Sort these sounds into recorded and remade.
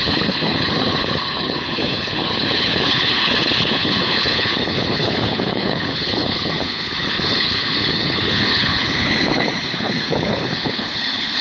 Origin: remade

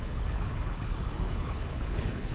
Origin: remade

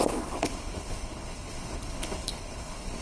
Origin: remade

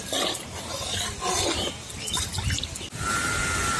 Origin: recorded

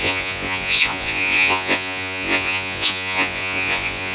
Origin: remade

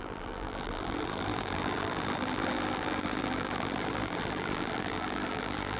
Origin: remade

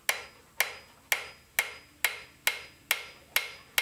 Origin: recorded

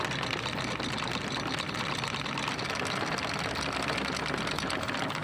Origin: recorded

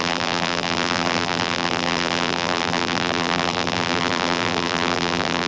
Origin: remade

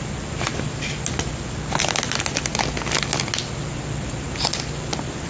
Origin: recorded